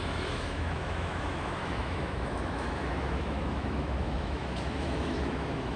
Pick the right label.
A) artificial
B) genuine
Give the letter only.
A